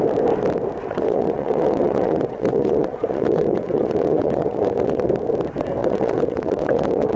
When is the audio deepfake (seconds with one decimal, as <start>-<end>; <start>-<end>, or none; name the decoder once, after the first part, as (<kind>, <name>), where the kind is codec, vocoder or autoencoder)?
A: 0.8-5.1 (vocoder, WaveNeXt); 5.8-7.2